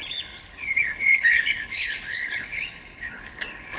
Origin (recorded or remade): remade